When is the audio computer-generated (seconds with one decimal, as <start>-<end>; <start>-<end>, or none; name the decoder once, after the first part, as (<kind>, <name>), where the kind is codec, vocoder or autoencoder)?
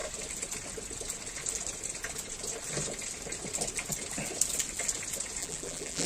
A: 5.4-6.1 (vocoder, BigVGAN v2)